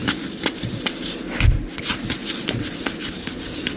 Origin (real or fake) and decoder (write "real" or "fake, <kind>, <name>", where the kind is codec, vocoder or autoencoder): real